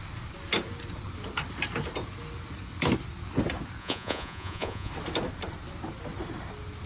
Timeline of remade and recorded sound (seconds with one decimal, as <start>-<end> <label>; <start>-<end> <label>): 0.0-3.8 recorded; 3.8-4.9 remade; 4.9-6.9 recorded